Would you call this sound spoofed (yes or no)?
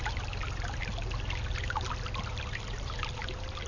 no